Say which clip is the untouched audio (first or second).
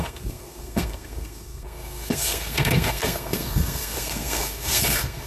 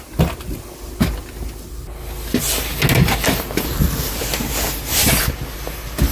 second